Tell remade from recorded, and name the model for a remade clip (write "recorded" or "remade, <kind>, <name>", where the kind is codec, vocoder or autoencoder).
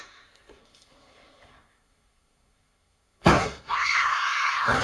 remade, codec, SNAC